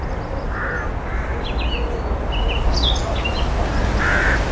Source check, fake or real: real